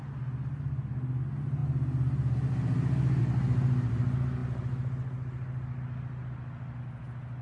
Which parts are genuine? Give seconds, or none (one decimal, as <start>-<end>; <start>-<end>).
0.0-7.4